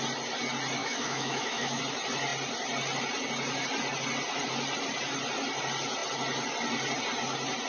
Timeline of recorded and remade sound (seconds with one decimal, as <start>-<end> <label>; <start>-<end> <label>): 0.0-0.8 recorded; 0.8-1.8 remade; 1.8-7.7 recorded